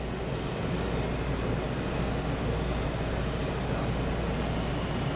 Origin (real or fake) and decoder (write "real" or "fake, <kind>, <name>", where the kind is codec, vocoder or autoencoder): real